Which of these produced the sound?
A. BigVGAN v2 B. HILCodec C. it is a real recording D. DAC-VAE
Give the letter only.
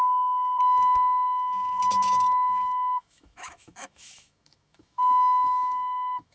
D